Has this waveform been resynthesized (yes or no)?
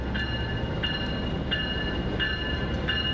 no